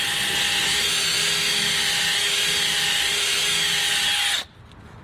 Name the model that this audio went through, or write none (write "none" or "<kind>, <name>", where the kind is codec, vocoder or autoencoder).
none